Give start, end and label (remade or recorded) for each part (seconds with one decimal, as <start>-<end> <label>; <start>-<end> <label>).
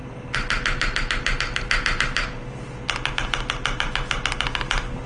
0.0-5.1 recorded